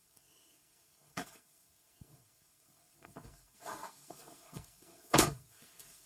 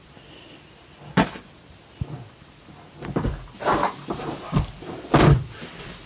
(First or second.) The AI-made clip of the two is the first